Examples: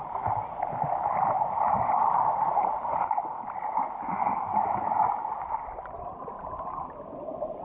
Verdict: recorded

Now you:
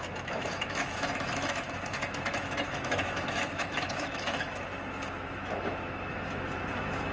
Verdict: remade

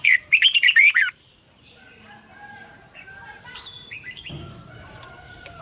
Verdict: remade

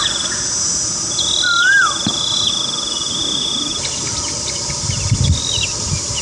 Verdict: recorded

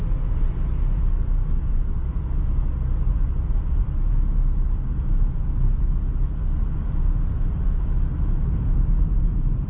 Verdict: recorded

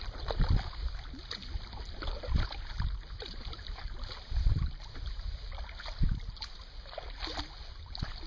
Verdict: recorded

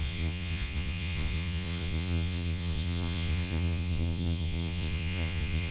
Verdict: remade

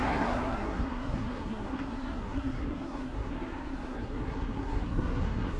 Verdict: remade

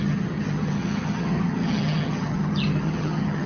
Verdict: remade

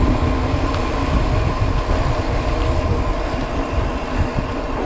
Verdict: recorded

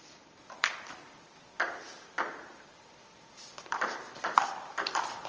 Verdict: remade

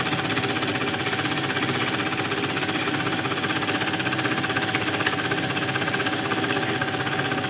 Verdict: recorded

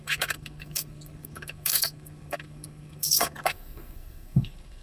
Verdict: remade